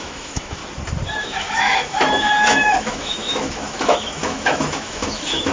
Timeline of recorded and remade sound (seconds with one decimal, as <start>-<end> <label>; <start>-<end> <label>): 0.0-0.6 remade; 0.6-1.2 recorded; 1.2-5.5 remade